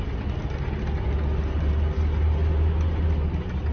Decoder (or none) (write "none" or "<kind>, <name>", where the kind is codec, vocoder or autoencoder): none